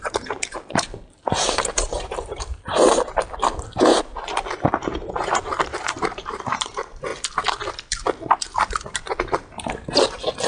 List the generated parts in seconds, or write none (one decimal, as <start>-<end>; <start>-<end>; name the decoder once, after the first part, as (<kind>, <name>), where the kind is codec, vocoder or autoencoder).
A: 0.0-7.1 (vocoder, BigVGAN v2); 7.7-10.5